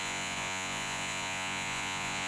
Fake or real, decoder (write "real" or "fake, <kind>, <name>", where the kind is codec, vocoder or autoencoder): fake, vocoder, Vocos